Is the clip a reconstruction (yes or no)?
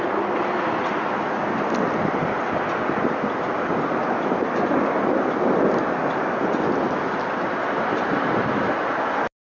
no